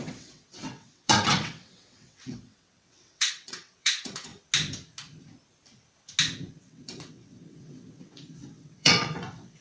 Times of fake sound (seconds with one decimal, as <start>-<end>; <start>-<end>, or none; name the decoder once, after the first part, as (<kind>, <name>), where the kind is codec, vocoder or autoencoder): 0.0-4.3 (vocoder, WaveNeXt); 6.5-9.6